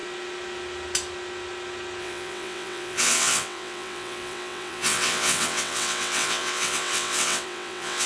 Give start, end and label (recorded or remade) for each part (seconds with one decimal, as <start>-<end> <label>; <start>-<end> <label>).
0.0-2.0 recorded; 2.0-8.1 remade